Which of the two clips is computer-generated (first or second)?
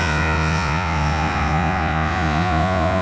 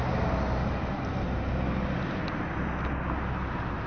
first